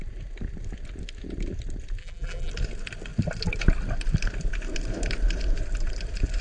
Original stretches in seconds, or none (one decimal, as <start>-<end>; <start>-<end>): 0.0-2.0; 2.5-6.4